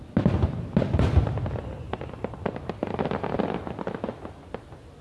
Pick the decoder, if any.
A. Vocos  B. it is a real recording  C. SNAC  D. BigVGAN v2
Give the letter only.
B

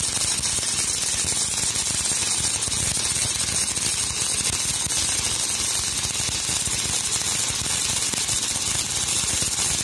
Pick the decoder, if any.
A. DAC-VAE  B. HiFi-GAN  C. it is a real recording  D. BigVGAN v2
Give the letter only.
C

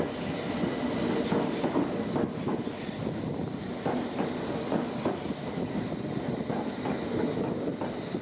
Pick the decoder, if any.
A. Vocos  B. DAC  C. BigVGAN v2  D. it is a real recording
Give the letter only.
D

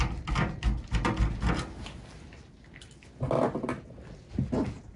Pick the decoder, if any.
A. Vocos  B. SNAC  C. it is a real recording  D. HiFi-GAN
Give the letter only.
C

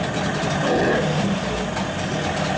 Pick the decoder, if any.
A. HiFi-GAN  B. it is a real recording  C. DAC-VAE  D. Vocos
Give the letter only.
B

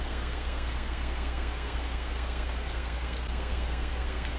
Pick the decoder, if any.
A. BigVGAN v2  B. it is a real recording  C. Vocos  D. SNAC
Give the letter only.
D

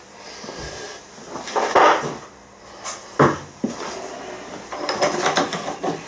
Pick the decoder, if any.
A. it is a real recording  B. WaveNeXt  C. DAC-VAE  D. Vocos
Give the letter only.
A